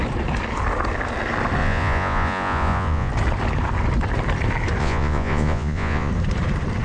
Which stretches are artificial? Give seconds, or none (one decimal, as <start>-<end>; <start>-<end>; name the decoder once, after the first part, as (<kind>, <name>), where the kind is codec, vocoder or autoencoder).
1.6-3.1 (vocoder, Vocos); 4.8-6.1